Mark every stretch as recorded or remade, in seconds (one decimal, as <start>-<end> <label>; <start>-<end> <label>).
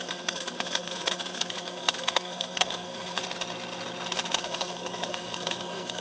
0.0-3.2 remade; 3.2-4.4 recorded; 4.4-6.0 remade